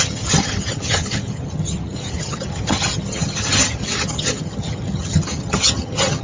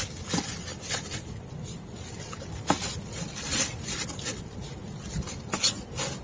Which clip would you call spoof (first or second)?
first